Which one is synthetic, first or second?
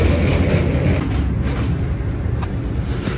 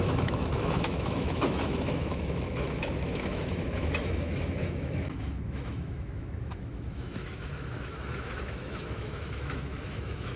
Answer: second